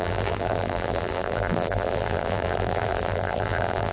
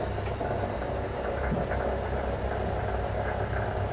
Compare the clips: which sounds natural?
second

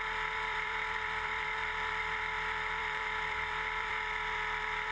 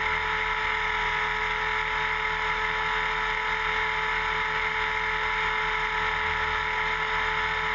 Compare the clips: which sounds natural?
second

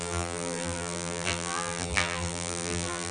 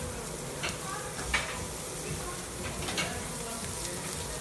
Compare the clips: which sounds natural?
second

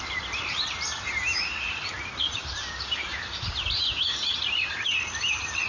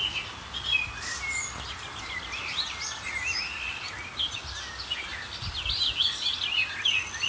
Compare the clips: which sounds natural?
second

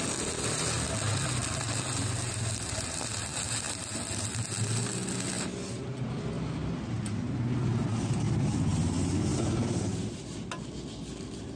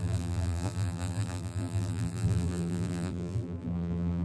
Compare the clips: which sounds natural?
first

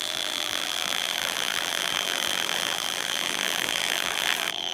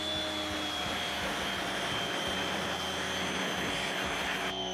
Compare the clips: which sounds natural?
second